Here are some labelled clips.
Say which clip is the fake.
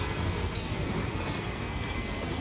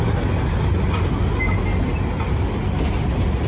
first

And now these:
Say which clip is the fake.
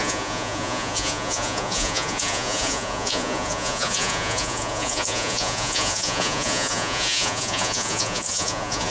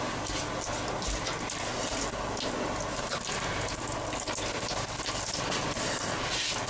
first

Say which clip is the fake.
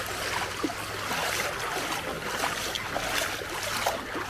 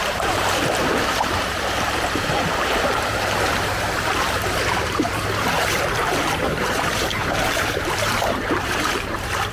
second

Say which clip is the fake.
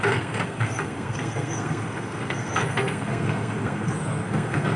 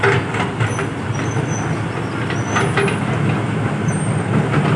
first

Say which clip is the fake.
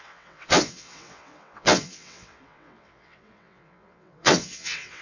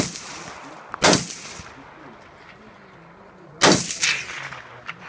first